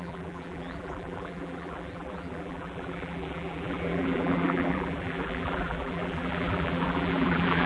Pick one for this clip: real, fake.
fake